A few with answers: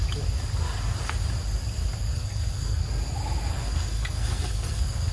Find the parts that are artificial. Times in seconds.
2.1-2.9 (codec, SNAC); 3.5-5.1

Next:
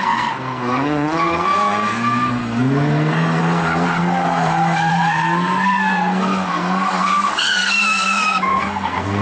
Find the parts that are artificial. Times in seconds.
0.0-9.2 (codec, SNAC)